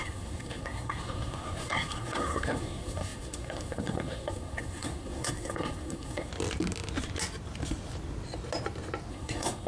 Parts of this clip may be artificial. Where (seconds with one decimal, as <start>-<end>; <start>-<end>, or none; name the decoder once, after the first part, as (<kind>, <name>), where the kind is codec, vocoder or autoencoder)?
0.0-6.3 (codec, SNAC); 9.1-9.7